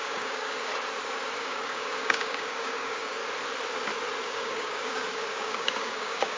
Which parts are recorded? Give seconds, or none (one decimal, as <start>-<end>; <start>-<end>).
0.7-1.4; 3.2-4.2